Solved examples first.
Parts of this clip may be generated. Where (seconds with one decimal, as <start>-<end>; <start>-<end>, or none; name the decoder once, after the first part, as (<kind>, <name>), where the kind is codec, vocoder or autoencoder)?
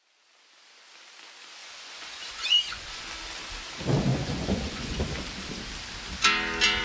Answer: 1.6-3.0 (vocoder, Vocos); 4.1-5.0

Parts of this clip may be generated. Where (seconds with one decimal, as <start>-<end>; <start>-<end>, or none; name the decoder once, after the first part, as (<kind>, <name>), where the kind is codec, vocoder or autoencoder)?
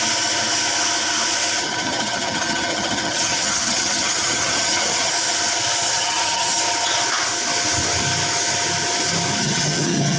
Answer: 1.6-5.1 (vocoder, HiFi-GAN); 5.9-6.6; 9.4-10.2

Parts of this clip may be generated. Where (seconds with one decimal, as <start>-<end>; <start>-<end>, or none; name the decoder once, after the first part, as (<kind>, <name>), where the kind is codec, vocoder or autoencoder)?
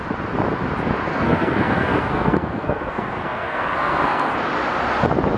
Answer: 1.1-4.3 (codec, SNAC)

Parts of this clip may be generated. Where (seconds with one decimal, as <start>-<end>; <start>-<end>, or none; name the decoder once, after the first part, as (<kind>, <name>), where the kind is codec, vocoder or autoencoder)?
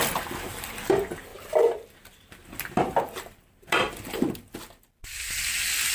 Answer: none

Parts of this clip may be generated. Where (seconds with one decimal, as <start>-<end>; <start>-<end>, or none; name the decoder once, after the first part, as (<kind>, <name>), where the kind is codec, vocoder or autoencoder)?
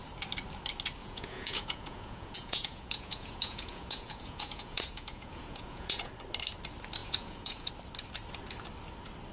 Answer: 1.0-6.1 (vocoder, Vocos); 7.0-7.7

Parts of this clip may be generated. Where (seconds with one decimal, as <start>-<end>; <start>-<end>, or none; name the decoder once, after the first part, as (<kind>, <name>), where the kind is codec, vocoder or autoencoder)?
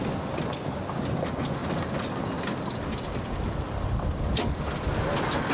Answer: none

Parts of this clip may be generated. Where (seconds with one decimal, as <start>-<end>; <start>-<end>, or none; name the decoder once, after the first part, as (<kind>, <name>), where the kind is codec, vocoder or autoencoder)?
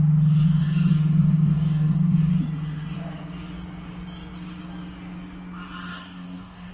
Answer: 0.6-2.3 (codec, DAC); 5.9-6.7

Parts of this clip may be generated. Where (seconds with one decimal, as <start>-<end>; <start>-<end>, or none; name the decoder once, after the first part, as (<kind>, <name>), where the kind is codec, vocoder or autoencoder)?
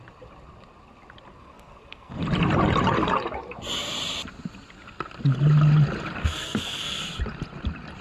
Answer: 1.4-2.2 (codec, SNAC); 6.2-7.0